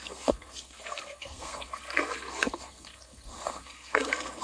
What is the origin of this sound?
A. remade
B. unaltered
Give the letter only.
A